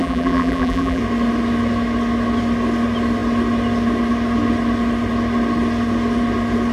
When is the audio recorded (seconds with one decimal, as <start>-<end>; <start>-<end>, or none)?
1.0-6.7